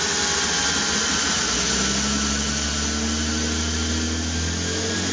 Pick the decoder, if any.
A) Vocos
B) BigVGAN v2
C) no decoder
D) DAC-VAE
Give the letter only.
C